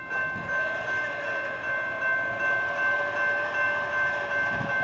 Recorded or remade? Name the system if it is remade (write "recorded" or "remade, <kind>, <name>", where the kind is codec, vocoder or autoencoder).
recorded